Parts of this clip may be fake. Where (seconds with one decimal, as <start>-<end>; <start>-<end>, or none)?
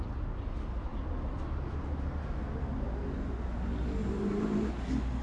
4.0-4.7